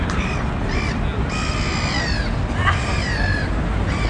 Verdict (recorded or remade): recorded